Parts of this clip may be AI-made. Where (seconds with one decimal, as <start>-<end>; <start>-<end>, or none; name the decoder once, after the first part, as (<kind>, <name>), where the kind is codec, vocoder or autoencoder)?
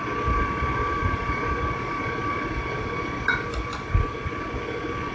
1.0-4.1 (vocoder, BigVGAN v2)